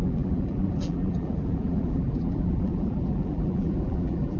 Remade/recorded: remade